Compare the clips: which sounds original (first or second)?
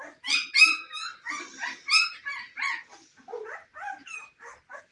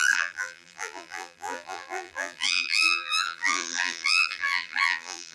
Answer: first